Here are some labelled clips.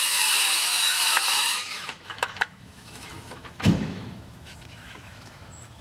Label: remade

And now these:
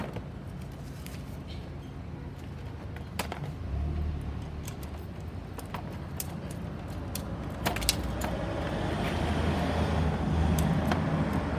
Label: recorded